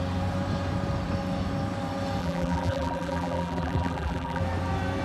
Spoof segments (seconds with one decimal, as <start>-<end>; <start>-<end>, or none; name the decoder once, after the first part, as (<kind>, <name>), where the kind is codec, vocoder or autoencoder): 2.2-4.4 (vocoder, BigVGAN v2)